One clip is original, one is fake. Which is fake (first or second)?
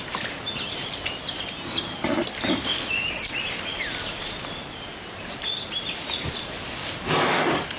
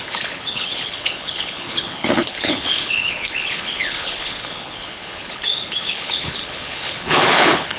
second